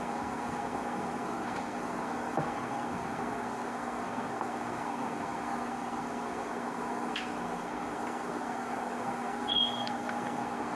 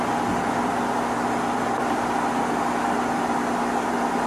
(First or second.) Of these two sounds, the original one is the second